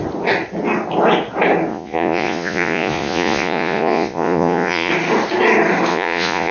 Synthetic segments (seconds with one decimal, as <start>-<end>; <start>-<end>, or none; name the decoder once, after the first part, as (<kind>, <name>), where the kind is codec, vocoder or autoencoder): 1.7-4.9 (vocoder, Vocos); 5.9-6.5